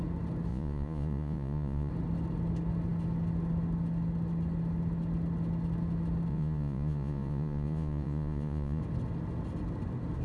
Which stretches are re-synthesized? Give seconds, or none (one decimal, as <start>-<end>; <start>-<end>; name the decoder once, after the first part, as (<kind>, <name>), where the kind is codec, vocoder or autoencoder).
0.5-1.9 (vocoder, Vocos); 6.3-8.8

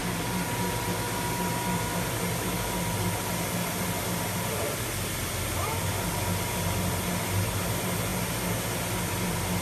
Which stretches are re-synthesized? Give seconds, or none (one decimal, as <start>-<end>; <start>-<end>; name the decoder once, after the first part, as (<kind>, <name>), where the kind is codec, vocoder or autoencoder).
none